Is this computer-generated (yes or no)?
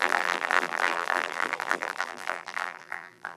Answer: yes